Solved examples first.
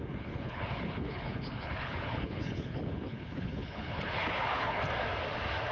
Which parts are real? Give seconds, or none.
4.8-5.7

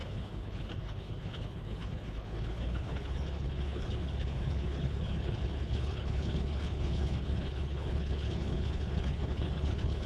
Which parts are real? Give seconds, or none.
none

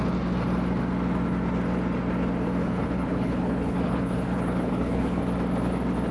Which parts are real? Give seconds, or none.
0.0-2.6; 5.2-6.1

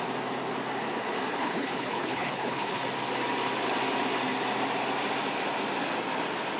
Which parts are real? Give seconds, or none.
0.0-1.3; 2.8-6.6

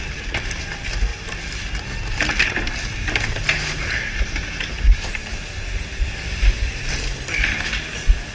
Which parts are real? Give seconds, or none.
0.0-8.3

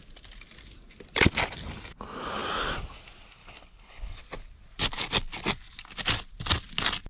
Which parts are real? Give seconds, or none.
0.0-3.4; 4.2-7.1

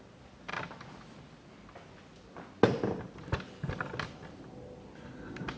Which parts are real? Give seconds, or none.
0.0-5.6